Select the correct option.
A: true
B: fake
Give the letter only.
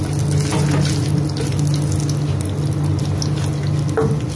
A